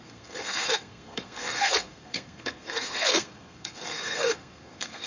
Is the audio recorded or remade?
remade